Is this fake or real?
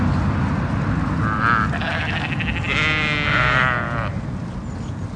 real